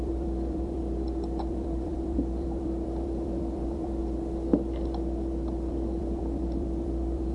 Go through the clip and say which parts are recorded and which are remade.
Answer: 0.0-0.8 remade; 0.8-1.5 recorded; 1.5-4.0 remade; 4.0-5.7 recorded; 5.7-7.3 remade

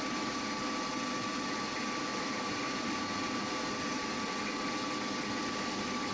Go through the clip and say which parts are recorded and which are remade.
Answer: 0.0-2.1 recorded; 2.1-4.1 remade; 4.1-6.1 recorded

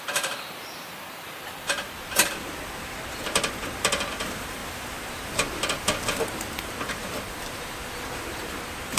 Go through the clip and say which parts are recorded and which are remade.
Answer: 0.0-9.0 remade